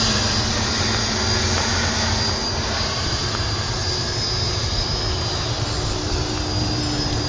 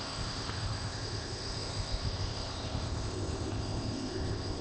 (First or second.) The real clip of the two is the first